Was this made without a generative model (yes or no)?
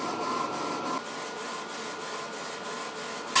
yes